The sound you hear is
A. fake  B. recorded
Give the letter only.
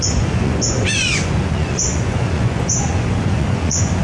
A